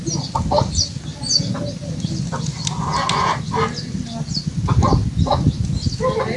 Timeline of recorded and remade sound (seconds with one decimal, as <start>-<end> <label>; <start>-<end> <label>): 0.0-6.4 recorded